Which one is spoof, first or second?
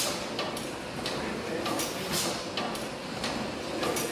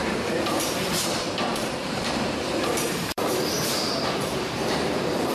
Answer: second